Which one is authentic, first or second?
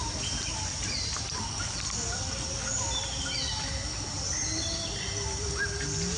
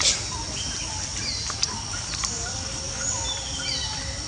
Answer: second